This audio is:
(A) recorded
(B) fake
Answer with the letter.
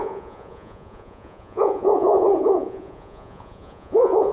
B